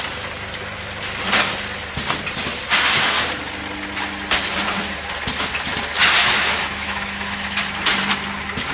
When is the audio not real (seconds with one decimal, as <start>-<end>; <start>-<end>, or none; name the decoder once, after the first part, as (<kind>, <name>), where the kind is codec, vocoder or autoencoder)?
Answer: 6.2-7.6 (autoencoder, DAC-VAE)

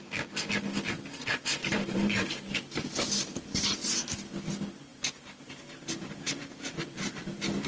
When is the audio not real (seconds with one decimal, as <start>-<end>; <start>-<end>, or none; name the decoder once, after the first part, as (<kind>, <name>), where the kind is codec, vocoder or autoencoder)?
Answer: 1.6-3.7 (vocoder, BigVGAN v2); 4.9-7.7

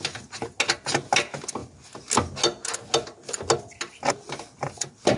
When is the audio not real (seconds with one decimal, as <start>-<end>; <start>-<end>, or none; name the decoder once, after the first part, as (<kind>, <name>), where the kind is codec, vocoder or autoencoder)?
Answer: none

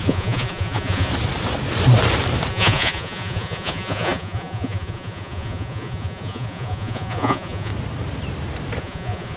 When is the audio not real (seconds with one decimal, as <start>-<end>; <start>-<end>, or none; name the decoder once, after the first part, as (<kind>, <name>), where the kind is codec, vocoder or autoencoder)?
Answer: 0.0-1.1 (vocoder, Vocos); 2.5-7.7; 8.8-9.4

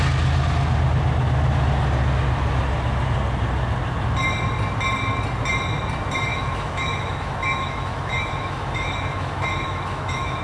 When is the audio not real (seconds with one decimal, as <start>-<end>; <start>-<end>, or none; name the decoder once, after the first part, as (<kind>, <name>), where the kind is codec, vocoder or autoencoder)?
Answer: 6.3-10.4 (autoencoder, DAC-VAE)